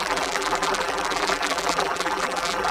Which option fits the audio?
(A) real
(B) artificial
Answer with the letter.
B